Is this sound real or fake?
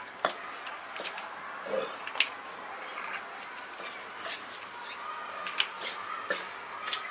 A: real